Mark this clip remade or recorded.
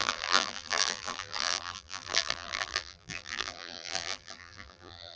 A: remade